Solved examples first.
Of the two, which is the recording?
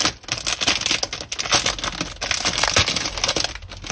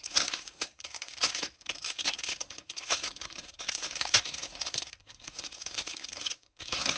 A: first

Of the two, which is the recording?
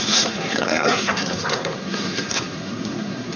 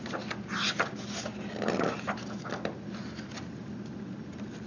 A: second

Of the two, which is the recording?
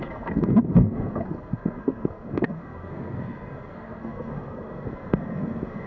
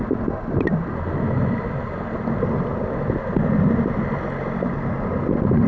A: second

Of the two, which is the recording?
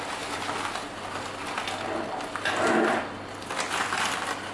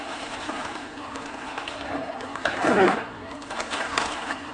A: first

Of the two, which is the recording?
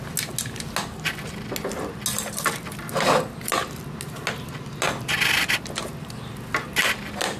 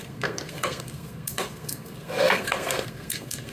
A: first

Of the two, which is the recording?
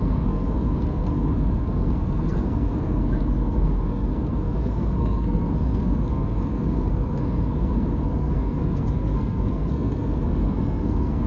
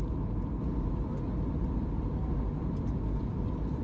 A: second